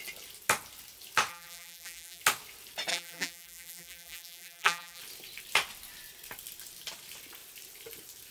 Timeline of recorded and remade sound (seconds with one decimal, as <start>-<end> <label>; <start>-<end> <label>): 0.0-1.3 recorded; 1.3-2.2 remade; 2.2-2.9 recorded; 2.9-5.0 remade; 5.0-8.3 recorded